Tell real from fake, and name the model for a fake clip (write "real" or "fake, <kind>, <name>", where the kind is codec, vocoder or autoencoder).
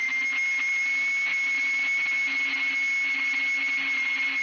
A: real